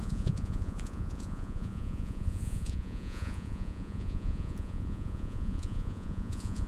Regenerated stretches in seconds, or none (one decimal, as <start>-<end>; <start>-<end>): 0.0-6.7